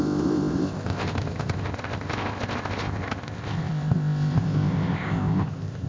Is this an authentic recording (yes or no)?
no